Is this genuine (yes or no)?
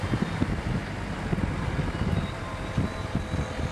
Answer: yes